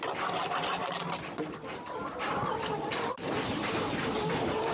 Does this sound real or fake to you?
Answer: fake